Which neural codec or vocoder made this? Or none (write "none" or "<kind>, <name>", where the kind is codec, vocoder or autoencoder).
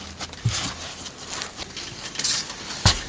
none